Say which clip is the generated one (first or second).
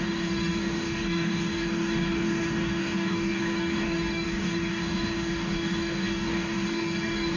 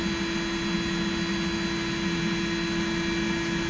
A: first